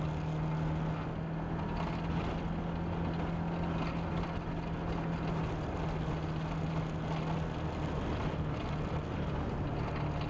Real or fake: real